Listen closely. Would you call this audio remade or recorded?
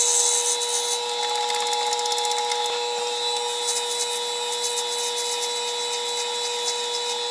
recorded